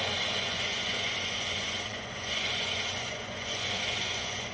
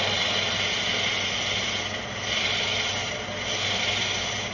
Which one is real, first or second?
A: second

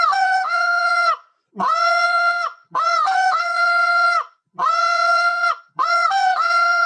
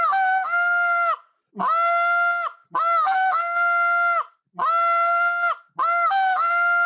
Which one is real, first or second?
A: second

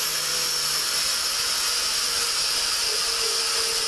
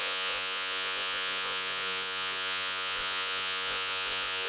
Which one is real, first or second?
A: first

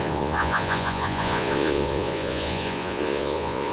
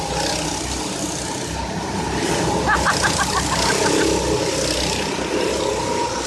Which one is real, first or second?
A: second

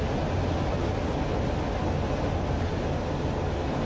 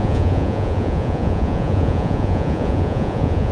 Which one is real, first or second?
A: first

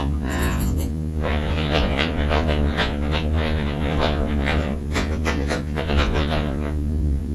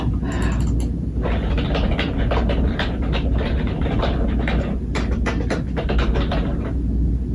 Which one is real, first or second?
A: second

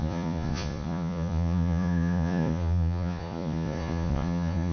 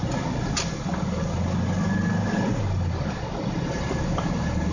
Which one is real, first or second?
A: second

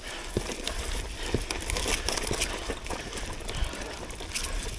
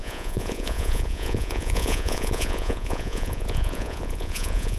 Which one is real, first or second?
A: first